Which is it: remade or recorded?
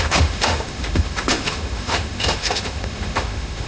remade